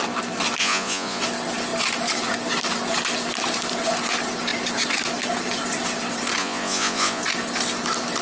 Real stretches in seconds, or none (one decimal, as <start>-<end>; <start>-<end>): 0.0-0.6; 1.2-6.4; 7.2-8.2